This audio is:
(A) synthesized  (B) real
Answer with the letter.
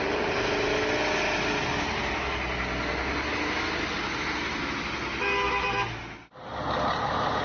B